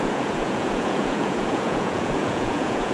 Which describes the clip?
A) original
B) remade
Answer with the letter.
B